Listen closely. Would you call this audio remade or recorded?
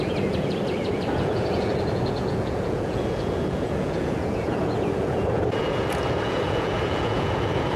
remade